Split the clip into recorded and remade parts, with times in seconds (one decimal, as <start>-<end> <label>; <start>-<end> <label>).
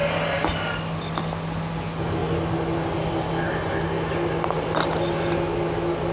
0.0-6.1 recorded